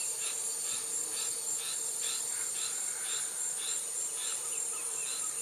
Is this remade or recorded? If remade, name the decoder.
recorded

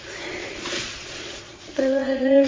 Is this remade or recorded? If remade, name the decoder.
remade, vocoder, Vocos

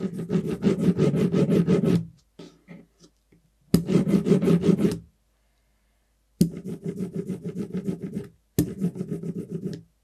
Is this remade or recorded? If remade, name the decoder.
recorded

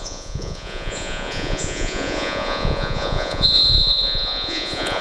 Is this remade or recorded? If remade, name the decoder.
remade, vocoder, Vocos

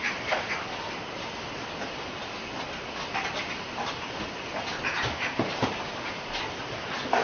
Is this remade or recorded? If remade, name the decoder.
recorded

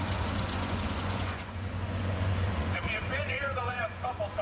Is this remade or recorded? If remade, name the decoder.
remade, vocoder, Vocos